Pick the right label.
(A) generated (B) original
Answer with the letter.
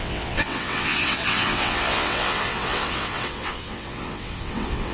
A